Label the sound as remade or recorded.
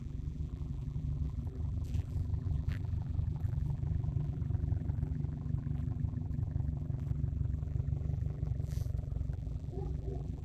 remade